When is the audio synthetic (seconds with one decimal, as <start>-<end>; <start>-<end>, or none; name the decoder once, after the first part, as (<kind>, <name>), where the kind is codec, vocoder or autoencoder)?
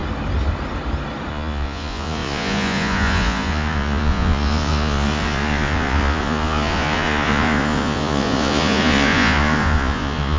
1.3-10.4 (vocoder, Vocos)